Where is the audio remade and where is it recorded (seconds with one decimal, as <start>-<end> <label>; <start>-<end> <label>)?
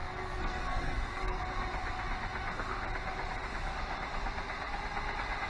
0.0-1.4 remade; 1.4-5.5 recorded